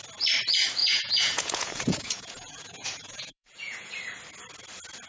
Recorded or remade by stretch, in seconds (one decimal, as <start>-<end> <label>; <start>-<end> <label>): 0.0-0.8 recorded; 0.8-3.9 remade; 3.9-5.1 recorded